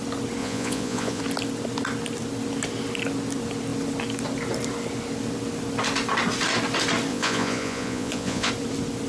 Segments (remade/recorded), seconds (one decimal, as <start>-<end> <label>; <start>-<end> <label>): 0.0-0.4 recorded; 0.4-1.2 remade; 1.2-7.1 recorded; 7.1-8.5 remade; 8.5-9.1 recorded